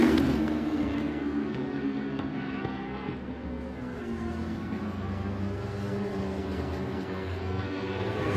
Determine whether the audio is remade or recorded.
remade